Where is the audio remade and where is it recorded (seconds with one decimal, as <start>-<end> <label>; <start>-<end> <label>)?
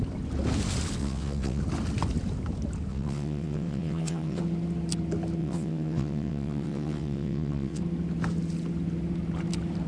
0.0-1.0 recorded; 1.0-1.6 remade; 1.6-2.9 recorded; 2.9-4.4 remade; 4.4-5.4 recorded; 5.4-7.8 remade; 7.8-9.9 recorded